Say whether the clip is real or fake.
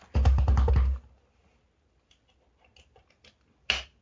real